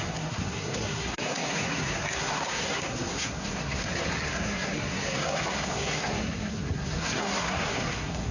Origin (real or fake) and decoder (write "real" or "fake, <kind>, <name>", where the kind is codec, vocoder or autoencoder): fake, codec, SNAC